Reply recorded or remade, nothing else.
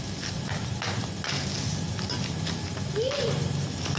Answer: recorded